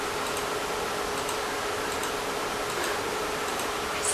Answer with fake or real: real